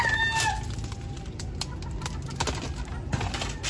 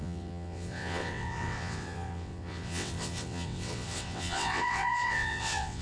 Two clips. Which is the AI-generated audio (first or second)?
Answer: second